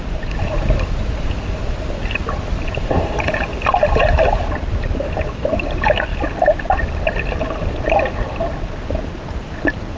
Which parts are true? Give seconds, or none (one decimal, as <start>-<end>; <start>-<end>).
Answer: 0.0-10.0